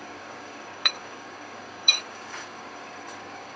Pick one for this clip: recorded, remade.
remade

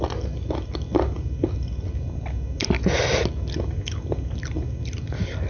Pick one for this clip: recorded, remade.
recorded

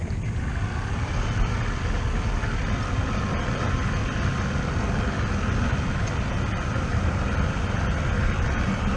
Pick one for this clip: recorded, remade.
recorded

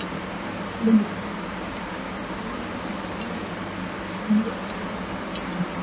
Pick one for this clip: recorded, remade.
recorded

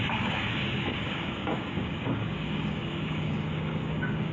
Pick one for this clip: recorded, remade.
remade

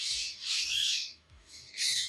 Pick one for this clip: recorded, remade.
remade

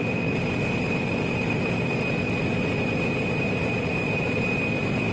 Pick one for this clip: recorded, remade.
recorded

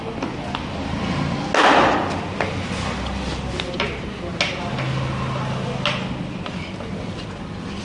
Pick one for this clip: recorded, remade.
recorded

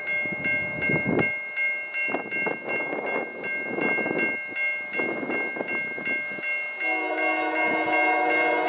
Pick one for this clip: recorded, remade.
recorded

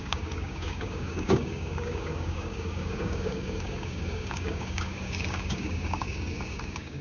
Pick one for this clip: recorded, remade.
remade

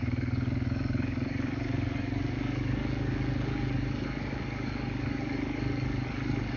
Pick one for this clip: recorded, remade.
remade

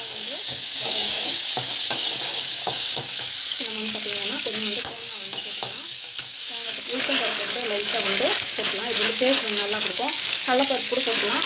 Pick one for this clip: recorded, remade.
remade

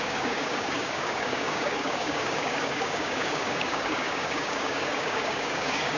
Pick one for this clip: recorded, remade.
remade